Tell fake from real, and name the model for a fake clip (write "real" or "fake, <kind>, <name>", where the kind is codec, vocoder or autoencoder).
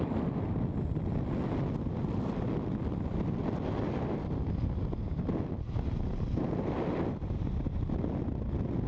real